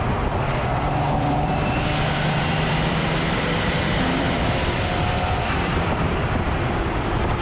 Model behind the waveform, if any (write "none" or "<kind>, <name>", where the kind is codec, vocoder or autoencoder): vocoder, BigVGAN v2